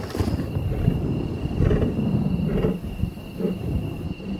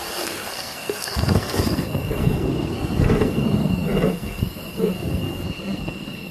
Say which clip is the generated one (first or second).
second